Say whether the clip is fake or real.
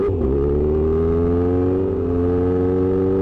real